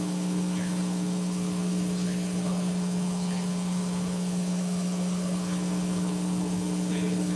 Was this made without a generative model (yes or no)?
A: no